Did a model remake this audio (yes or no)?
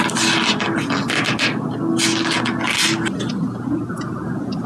no